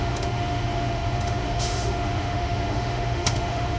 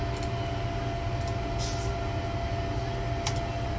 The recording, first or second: second